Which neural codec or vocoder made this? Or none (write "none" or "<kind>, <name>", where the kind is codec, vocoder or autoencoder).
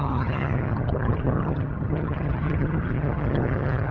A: vocoder, HiFi-GAN